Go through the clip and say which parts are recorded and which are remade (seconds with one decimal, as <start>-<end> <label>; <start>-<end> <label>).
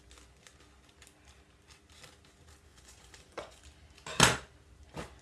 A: 0.0-2.7 recorded; 2.7-3.6 remade; 3.6-5.2 recorded